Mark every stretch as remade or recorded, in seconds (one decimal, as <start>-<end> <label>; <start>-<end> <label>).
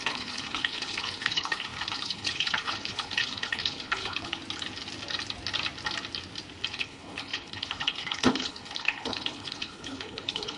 0.0-4.4 remade; 4.4-6.7 recorded; 6.7-10.6 remade